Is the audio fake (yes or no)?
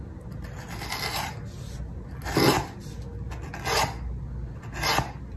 no